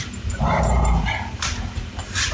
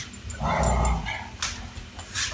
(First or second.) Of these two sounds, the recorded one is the second